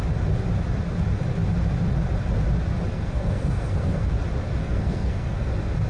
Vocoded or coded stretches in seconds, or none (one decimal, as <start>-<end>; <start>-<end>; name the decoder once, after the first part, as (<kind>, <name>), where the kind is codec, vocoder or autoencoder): 2.9-4.1 (codec, SNAC); 4.6-5.5